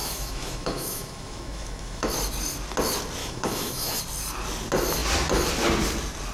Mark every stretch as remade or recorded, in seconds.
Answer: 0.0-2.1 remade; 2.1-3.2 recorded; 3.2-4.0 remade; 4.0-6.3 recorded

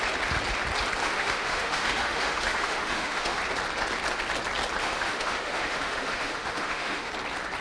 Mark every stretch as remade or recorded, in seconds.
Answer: 0.0-1.0 recorded; 1.0-3.4 remade; 3.4-4.8 recorded; 4.8-7.1 remade; 7.1-7.6 recorded

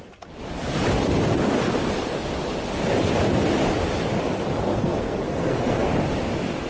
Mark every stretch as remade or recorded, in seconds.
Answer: 0.0-4.7 recorded; 4.7-5.9 remade; 5.9-6.7 recorded

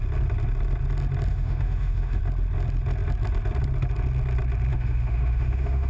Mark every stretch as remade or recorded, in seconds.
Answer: 0.0-1.3 recorded; 1.3-2.2 remade; 2.2-4.7 recorded; 4.7-5.9 remade

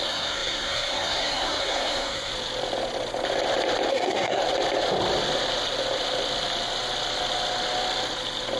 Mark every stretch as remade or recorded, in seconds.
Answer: 0.0-2.3 remade; 2.3-3.9 recorded; 3.9-4.4 remade; 4.4-8.6 recorded